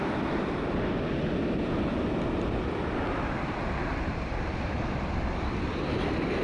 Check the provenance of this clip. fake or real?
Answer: real